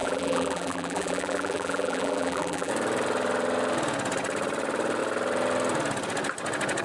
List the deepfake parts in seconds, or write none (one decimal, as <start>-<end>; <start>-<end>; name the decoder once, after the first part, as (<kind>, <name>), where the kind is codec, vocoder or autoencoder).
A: 0.0-2.7 (vocoder, BigVGAN v2)